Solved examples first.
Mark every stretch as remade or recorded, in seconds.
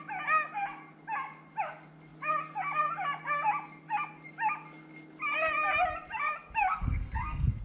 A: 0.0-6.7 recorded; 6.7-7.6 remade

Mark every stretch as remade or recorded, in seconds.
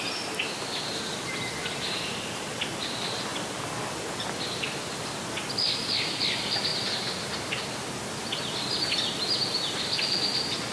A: 0.0-10.7 recorded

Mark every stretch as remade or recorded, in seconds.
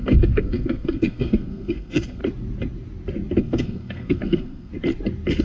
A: 0.0-2.2 remade; 2.2-3.4 recorded; 3.4-4.7 remade; 4.7-5.4 recorded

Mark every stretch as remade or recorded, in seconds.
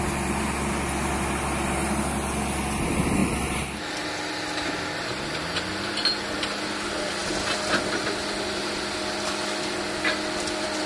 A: 0.0-10.9 recorded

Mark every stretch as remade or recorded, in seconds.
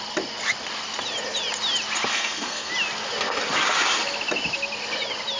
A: 0.0-2.1 recorded; 2.1-2.7 remade; 2.7-5.4 recorded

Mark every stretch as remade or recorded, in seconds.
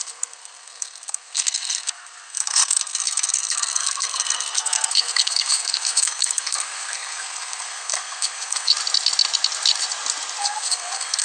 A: 0.0-8.7 remade; 8.7-10.4 recorded; 10.4-11.2 remade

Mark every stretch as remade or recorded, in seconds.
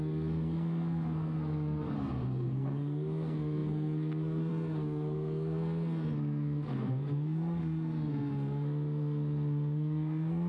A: 0.0-10.5 remade